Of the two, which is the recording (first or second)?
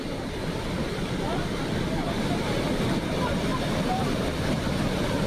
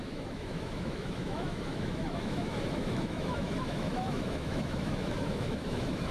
first